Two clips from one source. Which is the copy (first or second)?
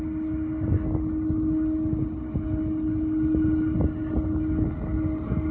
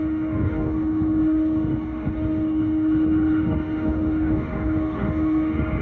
second